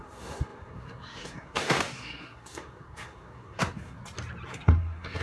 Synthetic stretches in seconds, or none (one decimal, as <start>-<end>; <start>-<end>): 0.0-4.0; 4.5-5.2

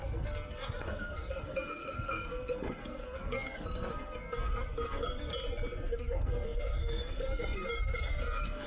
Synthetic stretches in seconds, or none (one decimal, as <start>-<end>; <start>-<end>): 0.0-5.3; 5.9-8.7

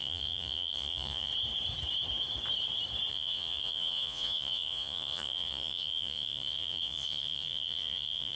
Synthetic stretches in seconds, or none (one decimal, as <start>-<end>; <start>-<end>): 0.0-1.3; 3.1-8.4

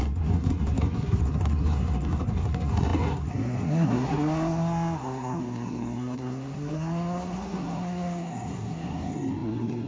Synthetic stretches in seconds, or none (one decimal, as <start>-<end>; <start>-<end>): 0.0-9.9

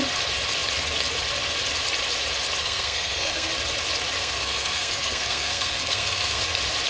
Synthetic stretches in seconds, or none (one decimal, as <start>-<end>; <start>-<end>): 2.6-3.5; 4.2-6.4